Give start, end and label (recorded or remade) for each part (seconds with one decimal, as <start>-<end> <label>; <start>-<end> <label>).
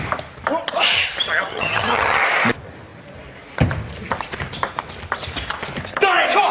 0.0-1.5 recorded; 1.5-2.2 remade; 2.2-6.5 recorded